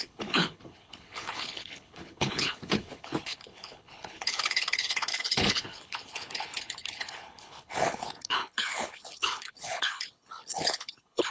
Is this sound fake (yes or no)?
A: yes